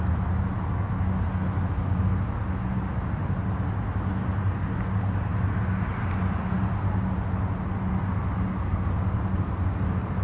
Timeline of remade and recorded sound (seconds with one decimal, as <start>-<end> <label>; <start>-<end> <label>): 0.0-10.2 recorded